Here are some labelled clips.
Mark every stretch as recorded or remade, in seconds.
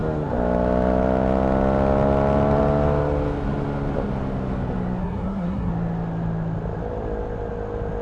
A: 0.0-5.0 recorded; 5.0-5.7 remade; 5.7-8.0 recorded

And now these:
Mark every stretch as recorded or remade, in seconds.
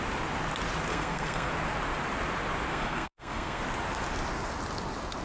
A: 0.0-0.9 recorded; 0.9-1.5 remade; 1.5-2.7 recorded; 2.7-3.6 remade; 3.6-5.2 recorded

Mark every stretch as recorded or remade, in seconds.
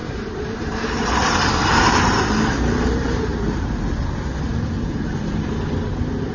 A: 0.0-3.8 remade; 3.8-4.5 recorded; 4.5-5.7 remade; 5.7-6.3 recorded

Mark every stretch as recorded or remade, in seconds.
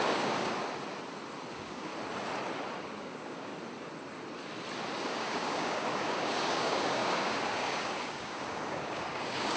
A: 0.0-0.6 remade; 0.6-1.5 recorded; 1.5-1.9 remade; 1.9-2.8 recorded; 2.8-3.5 remade; 3.5-5.1 recorded; 5.1-9.6 remade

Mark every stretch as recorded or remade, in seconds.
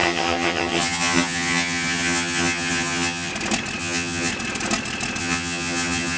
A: 0.0-3.3 remade; 3.3-3.8 recorded; 3.8-4.3 remade; 4.3-5.2 recorded; 5.2-6.2 remade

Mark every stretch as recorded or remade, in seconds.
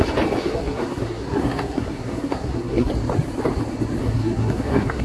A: 0.0-0.4 recorded; 0.4-2.9 remade; 2.9-4.0 recorded; 4.0-5.0 remade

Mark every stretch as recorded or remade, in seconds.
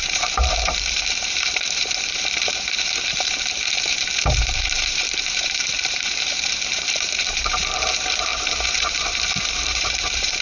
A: 0.0-10.4 remade